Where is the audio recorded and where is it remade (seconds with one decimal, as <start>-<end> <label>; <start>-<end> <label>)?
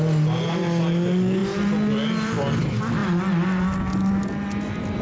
0.0-5.0 recorded